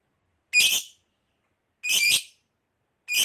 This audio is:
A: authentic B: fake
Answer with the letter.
A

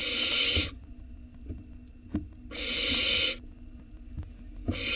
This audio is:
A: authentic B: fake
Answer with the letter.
A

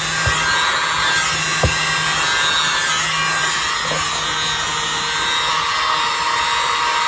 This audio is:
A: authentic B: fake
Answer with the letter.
A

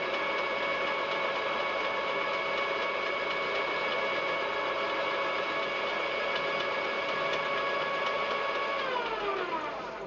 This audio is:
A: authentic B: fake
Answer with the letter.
A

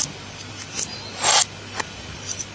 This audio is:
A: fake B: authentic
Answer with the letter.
B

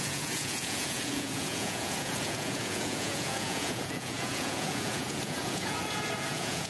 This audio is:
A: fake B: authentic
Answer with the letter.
A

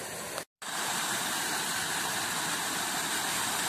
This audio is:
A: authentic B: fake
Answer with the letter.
A